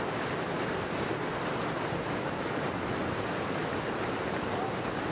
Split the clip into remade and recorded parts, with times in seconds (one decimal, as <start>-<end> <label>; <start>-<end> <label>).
0.0-5.1 recorded